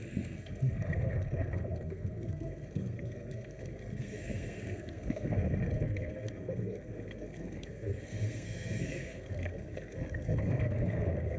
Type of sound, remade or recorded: remade